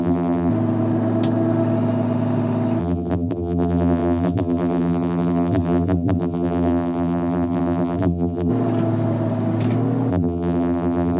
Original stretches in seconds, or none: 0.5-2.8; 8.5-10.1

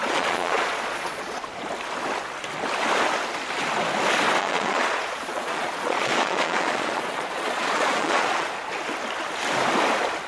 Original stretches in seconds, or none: 1.4-4.4; 8.5-10.3